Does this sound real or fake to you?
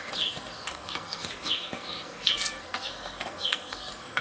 fake